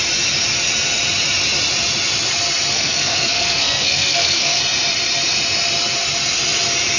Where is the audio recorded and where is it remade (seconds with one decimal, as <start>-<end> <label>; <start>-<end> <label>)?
0.0-2.7 recorded; 2.7-4.6 remade; 4.6-7.0 recorded